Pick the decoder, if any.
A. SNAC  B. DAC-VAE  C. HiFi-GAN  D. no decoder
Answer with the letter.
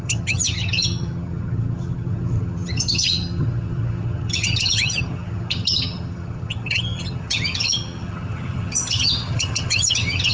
C